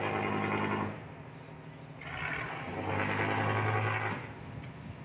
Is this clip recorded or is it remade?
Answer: recorded